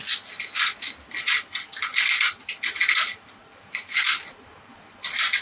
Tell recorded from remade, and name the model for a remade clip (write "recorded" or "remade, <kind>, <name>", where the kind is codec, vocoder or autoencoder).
recorded